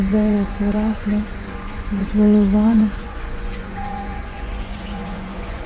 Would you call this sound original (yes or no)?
no